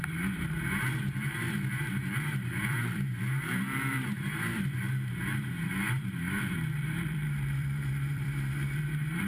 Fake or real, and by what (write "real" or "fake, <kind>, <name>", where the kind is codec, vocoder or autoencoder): fake, vocoder, BigVGAN v2